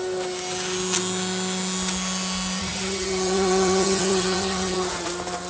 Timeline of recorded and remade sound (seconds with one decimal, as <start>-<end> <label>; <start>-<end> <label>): 0.0-2.6 recorded; 2.6-4.9 remade; 4.9-5.5 recorded